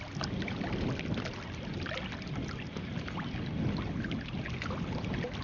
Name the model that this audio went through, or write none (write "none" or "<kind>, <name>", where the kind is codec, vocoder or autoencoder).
none